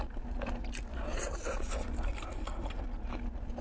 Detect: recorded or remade recorded